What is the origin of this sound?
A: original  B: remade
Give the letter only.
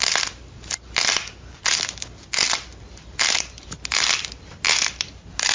A